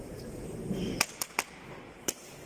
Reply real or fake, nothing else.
real